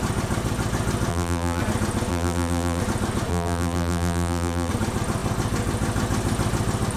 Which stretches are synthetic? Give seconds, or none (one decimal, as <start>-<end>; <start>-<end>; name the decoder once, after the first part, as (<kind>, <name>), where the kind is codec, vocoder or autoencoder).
1.1-1.6 (vocoder, BigVGAN v2); 2.1-2.8; 3.3-4.7